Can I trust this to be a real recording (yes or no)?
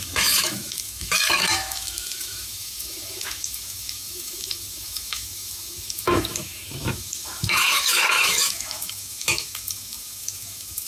no